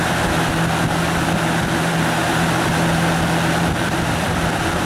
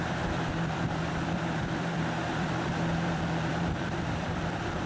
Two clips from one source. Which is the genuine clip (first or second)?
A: first